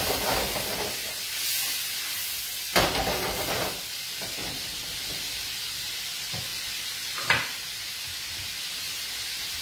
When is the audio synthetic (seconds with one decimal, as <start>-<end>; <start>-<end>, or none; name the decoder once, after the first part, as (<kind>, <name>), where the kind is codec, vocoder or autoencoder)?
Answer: 4.4-6.0 (vocoder, BigVGAN v2); 6.5-8.6